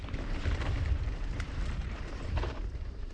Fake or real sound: fake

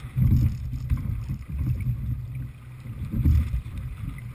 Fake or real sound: real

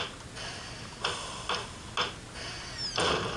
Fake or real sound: real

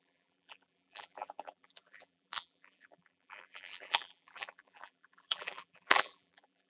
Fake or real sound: fake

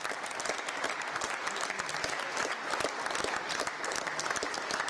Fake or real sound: real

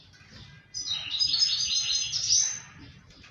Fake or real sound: real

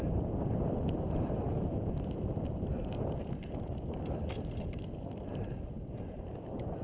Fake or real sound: fake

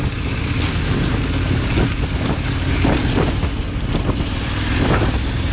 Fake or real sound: real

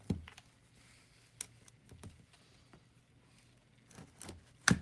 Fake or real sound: real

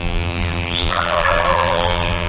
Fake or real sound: fake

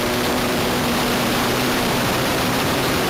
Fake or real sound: fake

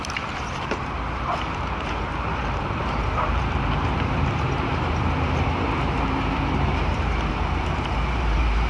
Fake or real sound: fake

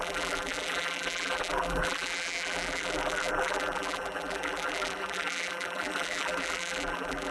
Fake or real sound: fake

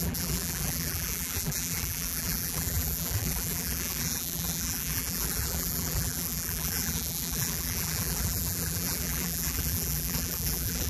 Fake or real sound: fake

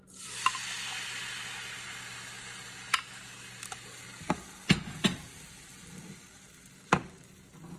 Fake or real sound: real